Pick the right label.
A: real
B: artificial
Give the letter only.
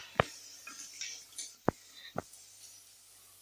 A